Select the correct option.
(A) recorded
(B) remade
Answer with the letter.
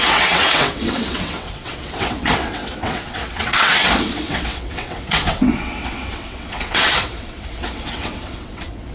B